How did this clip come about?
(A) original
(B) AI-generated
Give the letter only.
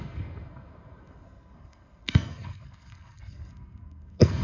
B